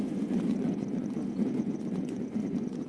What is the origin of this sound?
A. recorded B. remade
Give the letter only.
B